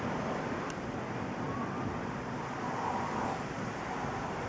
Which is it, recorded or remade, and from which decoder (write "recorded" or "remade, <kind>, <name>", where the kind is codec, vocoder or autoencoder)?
recorded